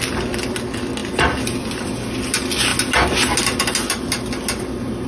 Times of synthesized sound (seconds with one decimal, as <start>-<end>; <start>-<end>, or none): none